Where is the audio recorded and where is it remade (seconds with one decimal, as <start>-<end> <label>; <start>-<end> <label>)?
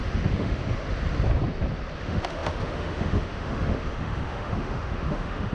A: 0.0-0.6 remade; 0.6-2.0 recorded; 2.0-5.5 remade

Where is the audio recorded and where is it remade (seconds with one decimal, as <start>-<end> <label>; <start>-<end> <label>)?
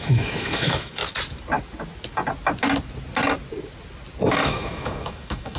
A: 0.0-1.0 remade; 1.0-4.3 recorded; 4.3-5.6 remade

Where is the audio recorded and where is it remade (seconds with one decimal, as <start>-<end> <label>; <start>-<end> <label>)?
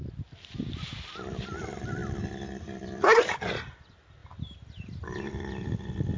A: 0.0-6.2 recorded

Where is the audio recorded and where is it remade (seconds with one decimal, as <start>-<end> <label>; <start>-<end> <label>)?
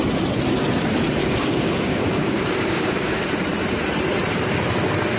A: 0.0-1.2 recorded; 1.2-3.2 remade; 3.2-5.2 recorded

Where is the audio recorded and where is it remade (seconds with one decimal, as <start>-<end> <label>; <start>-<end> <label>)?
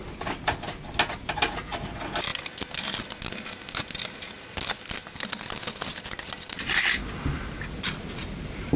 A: 0.0-8.8 recorded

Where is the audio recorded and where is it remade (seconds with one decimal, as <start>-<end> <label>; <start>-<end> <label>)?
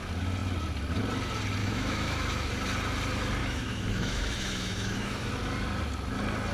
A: 0.0-1.6 recorded; 1.6-2.5 remade; 2.5-3.4 recorded; 3.4-5.3 remade; 5.3-6.5 recorded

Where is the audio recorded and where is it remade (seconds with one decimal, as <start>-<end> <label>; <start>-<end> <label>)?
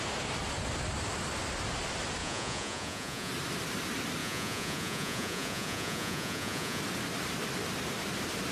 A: 0.0-2.2 recorded; 2.2-3.3 remade; 3.3-4.2 recorded; 4.2-6.8 remade; 6.8-8.5 recorded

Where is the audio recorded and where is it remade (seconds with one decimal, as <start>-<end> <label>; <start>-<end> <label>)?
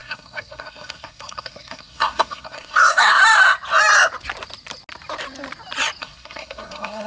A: 0.0-3.2 remade; 3.2-6.0 recorded; 6.0-7.1 remade